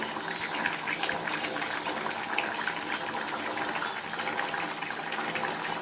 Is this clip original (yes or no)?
yes